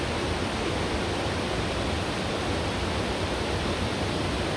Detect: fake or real fake